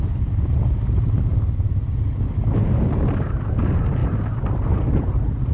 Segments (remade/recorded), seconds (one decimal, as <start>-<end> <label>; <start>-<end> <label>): 0.0-5.5 recorded